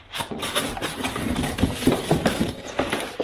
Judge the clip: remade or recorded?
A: remade